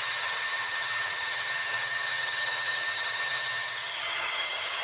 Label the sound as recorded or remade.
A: remade